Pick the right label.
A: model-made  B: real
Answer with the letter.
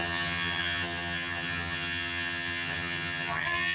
A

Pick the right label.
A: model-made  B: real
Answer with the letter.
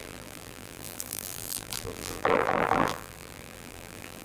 A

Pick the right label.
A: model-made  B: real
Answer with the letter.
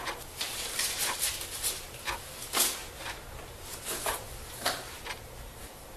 A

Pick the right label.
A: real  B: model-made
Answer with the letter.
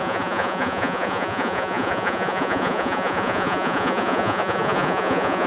B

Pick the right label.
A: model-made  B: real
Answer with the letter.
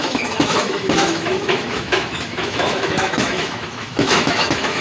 A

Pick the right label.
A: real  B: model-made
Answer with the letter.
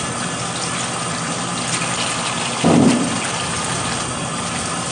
A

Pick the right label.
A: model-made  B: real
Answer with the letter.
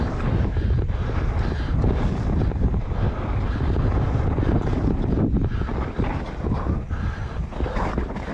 B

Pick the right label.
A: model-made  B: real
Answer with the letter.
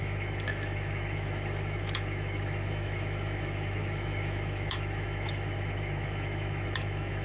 A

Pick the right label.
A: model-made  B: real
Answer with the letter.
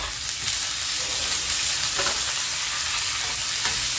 B